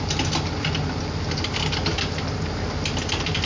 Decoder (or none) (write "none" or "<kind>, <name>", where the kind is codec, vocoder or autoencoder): none